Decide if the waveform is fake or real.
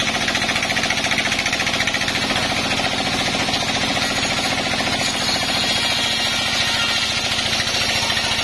real